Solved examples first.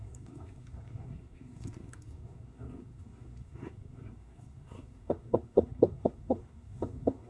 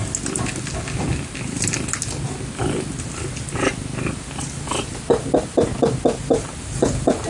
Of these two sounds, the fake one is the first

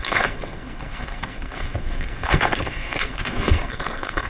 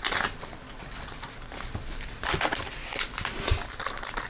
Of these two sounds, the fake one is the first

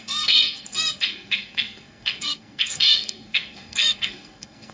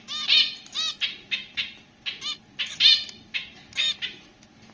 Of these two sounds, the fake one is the first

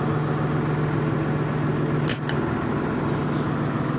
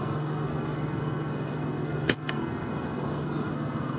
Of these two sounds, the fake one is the second